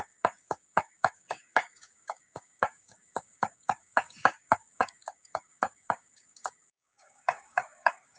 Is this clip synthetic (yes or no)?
yes